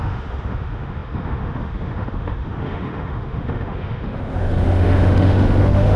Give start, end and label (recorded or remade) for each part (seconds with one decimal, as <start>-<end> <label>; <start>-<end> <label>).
0.0-6.0 remade